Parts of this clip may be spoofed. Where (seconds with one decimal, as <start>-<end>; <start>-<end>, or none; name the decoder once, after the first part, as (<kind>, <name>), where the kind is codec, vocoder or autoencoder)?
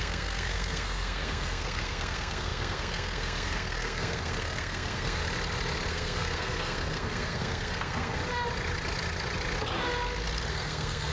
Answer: 0.0-5.2 (codec, SNAC); 5.9-8.2; 10.5-11.1